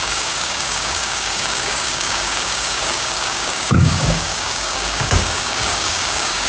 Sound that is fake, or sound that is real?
fake